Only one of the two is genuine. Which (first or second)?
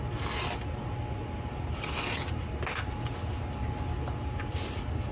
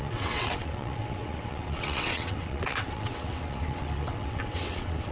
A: first